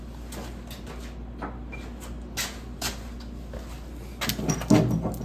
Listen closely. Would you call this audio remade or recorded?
recorded